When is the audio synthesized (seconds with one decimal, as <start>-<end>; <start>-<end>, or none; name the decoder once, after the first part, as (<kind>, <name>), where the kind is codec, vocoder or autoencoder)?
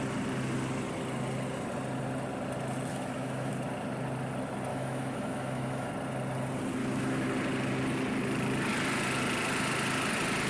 2.9-3.5 (autoencoder, DAC-VAE); 4.7-5.9; 6.8-7.3